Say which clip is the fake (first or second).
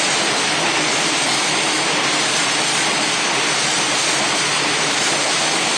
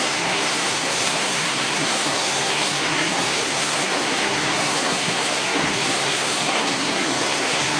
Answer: second